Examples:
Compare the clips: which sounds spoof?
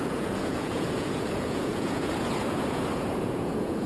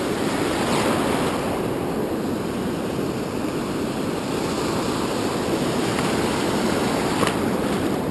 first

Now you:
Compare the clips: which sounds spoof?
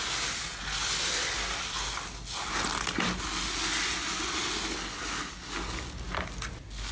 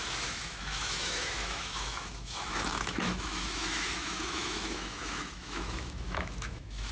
second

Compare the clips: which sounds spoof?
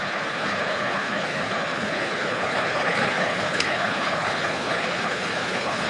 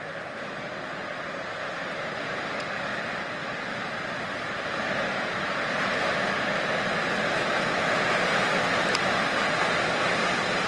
first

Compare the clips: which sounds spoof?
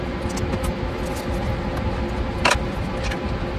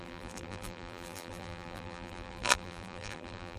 second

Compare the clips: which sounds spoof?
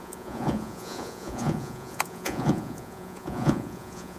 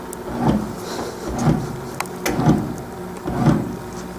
first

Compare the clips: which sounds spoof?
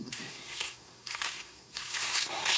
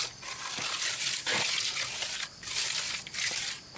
first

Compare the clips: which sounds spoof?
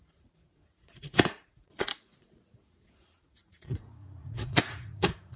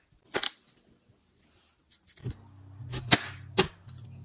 first